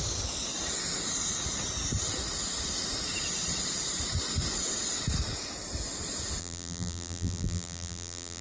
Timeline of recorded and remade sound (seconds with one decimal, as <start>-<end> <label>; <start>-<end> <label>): 0.0-6.4 recorded; 6.4-8.4 remade